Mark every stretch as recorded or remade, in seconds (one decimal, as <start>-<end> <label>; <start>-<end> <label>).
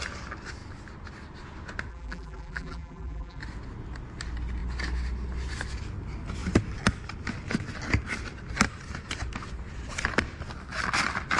0.0-1.9 recorded; 1.9-3.4 remade; 3.4-11.4 recorded